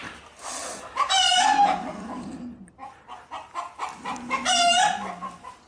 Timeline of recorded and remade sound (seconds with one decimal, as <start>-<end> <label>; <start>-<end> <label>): 0.0-1.2 recorded; 1.2-2.3 remade; 2.3-5.7 recorded